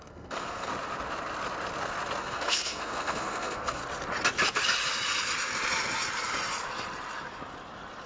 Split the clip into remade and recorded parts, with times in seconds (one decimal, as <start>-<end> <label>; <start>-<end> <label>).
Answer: 0.0-0.7 remade; 0.7-2.2 recorded; 2.2-3.8 remade; 3.8-8.1 recorded